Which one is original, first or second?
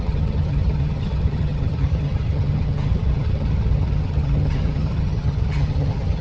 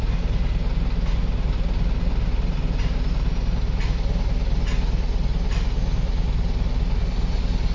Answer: second